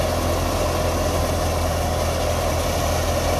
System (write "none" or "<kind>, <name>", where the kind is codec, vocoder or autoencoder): none